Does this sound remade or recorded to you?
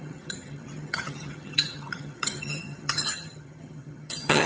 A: remade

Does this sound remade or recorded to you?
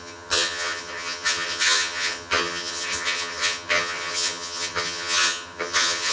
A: remade